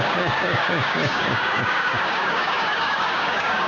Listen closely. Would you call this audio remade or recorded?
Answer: remade